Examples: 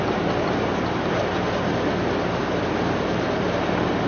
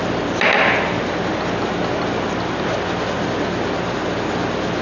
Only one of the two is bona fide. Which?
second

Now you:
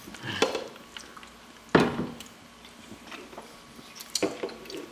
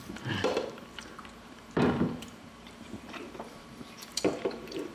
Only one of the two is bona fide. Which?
first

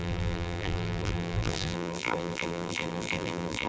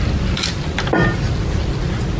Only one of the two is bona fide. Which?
second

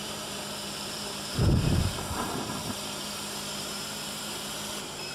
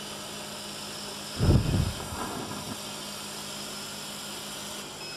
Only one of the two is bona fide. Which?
second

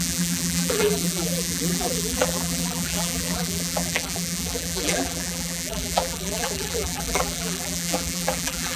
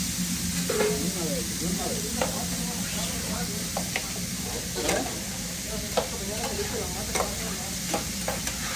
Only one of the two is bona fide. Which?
second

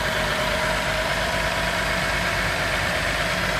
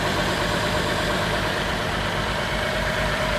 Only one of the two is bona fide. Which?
first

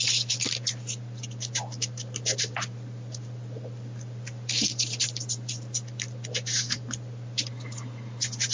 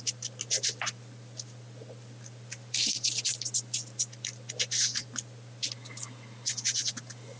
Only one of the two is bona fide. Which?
second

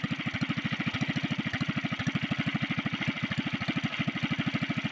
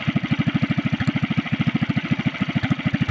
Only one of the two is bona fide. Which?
first